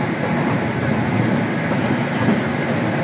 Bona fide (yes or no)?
yes